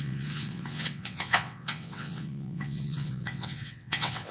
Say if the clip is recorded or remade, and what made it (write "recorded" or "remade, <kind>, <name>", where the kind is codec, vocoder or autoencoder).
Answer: remade, vocoder, WaveNeXt